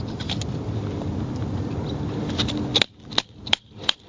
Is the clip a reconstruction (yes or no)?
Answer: no